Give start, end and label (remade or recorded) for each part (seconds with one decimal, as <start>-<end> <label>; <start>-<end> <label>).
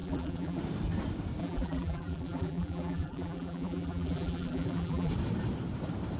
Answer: 0.0-0.6 remade; 0.6-1.4 recorded; 1.4-5.1 remade; 5.1-6.2 recorded